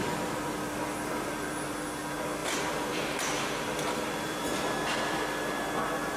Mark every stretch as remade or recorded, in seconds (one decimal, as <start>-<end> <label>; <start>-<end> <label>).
0.0-2.4 recorded; 2.4-5.6 remade; 5.6-6.2 recorded